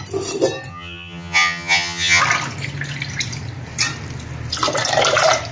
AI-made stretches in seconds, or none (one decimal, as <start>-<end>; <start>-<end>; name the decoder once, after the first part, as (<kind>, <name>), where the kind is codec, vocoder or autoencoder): 0.7-2.2 (vocoder, HiFi-GAN)